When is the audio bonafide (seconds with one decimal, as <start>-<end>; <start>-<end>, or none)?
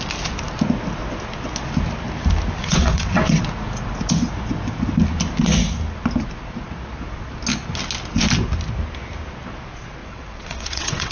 0.0-2.6; 3.4-10.0